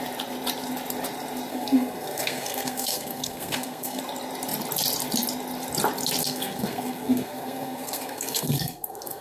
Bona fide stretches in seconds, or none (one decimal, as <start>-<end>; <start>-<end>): 0.0-1.5; 4.0-6.2